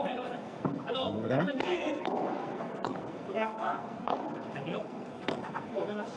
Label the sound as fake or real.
fake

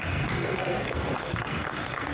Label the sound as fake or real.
fake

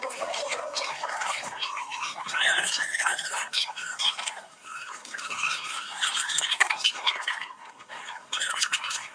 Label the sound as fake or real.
fake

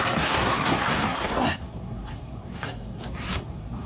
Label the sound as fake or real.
fake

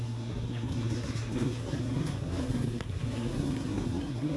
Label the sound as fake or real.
fake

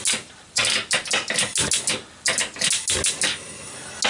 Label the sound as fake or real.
real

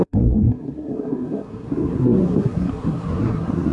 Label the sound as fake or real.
fake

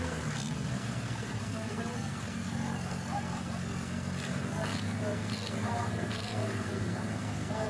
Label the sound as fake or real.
fake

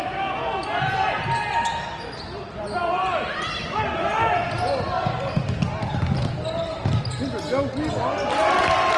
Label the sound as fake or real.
real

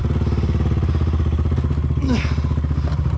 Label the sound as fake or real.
real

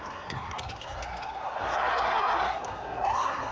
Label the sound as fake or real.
fake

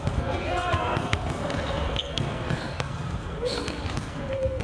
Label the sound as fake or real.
fake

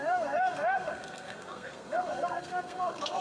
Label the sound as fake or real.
fake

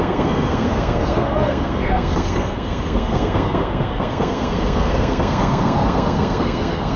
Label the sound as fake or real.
fake